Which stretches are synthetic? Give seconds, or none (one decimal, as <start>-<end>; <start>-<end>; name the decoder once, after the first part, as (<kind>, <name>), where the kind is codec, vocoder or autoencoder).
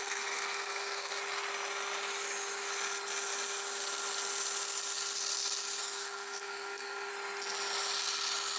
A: 0.0-1.1 (codec, SNAC); 5.8-7.1